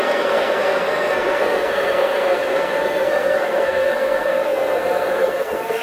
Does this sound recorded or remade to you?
remade